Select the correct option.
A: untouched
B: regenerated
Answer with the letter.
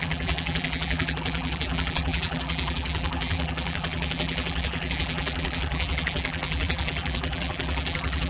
B